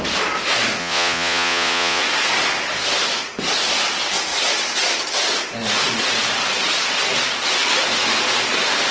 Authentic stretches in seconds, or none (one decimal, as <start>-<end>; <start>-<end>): 0.0-0.8; 2.0-8.9